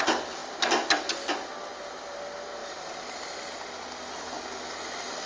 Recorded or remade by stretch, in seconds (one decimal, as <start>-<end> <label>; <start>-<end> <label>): 0.0-5.3 recorded